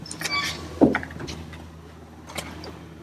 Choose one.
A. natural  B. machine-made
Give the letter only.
A